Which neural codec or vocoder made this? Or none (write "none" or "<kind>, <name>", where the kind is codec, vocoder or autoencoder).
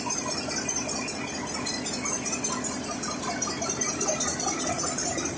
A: none